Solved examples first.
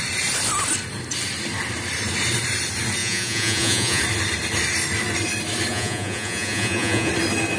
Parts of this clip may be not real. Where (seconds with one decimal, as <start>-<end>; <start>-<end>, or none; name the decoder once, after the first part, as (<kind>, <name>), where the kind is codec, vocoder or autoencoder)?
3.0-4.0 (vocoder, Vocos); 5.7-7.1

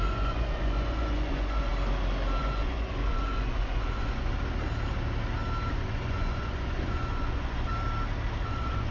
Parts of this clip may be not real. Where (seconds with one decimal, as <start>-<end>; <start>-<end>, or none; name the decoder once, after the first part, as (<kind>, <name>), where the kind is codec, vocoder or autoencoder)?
0.0-1.7 (vocoder, Vocos); 2.4-4.3; 5.7-7.7; 8.4-8.9

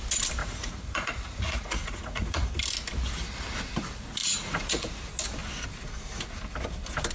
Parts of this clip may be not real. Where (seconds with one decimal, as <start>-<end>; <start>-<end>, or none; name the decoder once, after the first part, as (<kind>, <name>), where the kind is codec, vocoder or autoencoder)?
0.4-2.5 (vocoder, Vocos); 4.2-4.9